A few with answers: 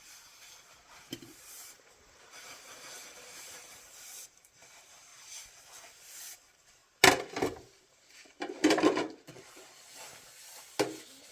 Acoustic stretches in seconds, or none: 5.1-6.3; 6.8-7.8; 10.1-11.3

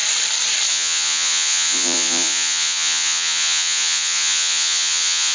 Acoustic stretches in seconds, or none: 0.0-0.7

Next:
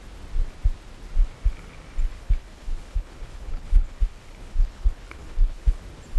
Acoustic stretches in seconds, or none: 0.0-2.1; 5.8-6.2

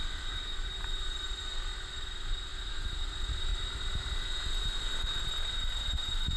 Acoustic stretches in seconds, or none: none

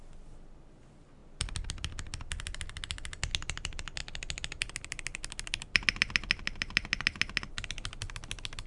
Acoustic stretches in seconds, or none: 0.0-8.7

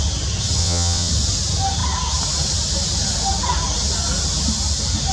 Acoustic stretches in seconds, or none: 0.0-0.6; 1.1-5.1